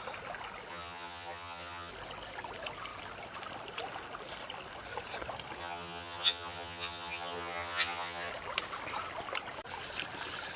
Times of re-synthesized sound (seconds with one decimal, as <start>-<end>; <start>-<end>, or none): 0.7-1.9; 5.6-8.3